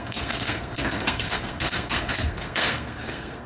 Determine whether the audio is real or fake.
fake